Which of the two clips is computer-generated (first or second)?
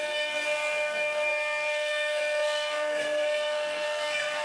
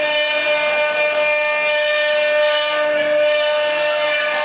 first